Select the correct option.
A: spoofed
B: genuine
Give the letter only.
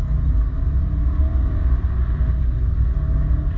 B